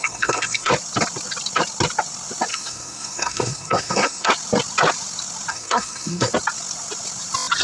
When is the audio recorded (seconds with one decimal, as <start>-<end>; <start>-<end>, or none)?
0.7-2.5; 4.3-5.5; 6.3-7.6